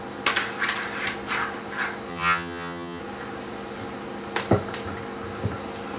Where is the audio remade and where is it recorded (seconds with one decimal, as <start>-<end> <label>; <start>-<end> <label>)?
0.0-2.1 recorded; 2.1-3.0 remade; 3.0-6.0 recorded